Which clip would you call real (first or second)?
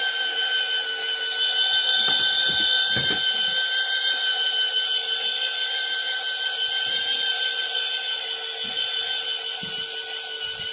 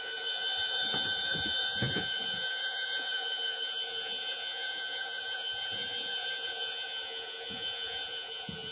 first